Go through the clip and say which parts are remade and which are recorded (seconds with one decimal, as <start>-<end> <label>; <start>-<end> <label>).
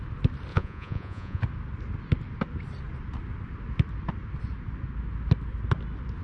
0.0-0.5 recorded; 0.5-1.4 remade; 1.4-6.2 recorded